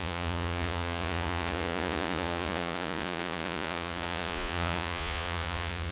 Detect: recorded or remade remade